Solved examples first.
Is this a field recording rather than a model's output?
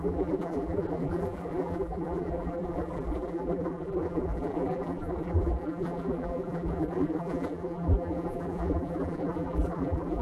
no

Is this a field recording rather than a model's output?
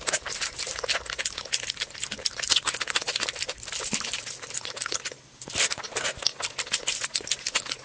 yes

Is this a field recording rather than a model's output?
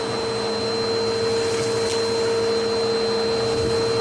yes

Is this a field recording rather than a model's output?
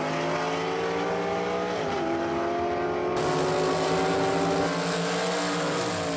yes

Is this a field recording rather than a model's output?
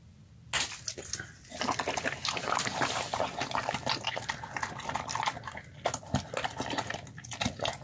yes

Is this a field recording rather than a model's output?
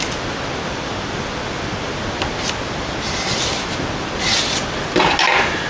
yes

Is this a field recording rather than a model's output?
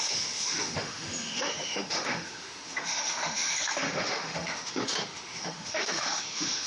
no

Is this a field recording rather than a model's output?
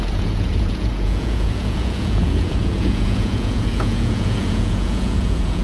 no